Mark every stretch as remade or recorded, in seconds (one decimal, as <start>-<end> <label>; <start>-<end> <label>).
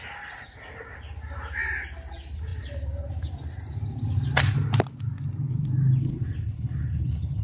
0.0-6.0 recorded; 6.0-7.4 remade